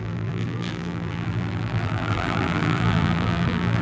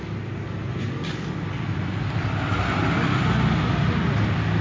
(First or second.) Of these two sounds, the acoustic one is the second